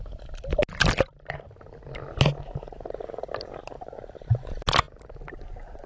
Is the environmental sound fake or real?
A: real